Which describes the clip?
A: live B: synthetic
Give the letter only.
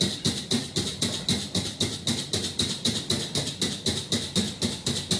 A